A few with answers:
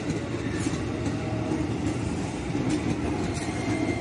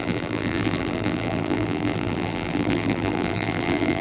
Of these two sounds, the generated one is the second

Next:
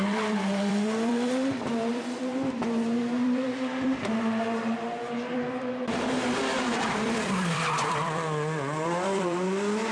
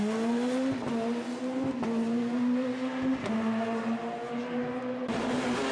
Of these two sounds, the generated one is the first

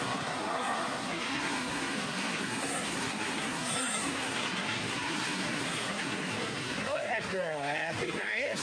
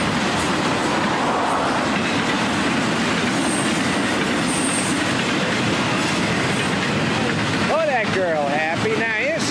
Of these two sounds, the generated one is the first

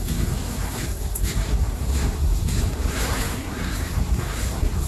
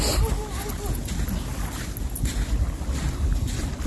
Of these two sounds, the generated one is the first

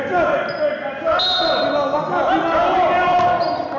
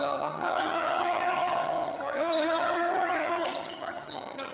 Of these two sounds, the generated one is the second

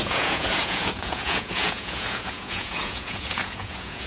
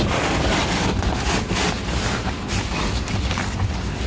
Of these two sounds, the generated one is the first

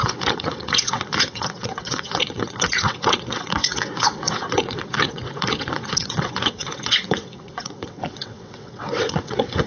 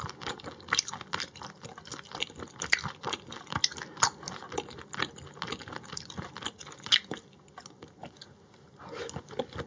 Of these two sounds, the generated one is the first